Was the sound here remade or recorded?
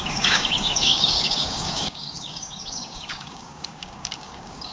remade